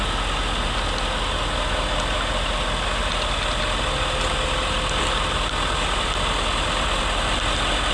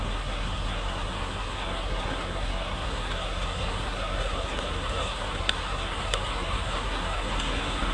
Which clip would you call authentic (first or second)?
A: first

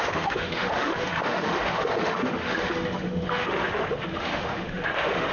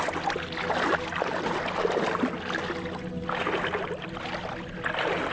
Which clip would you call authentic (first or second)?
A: second